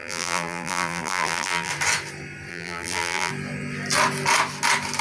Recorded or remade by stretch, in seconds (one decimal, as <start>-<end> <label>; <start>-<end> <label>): 0.0-1.7 remade; 1.7-2.5 recorded; 2.5-3.3 remade; 3.3-5.0 recorded